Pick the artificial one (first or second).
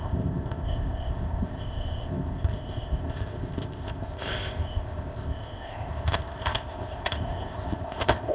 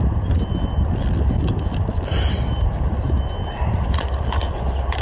first